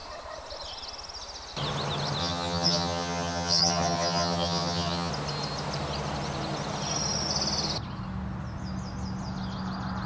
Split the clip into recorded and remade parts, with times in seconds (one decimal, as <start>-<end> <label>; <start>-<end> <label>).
0.0-2.2 recorded; 2.2-5.1 remade; 5.1-10.1 recorded